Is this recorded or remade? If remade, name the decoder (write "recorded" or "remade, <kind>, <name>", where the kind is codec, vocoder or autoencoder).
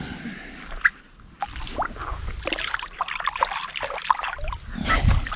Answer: recorded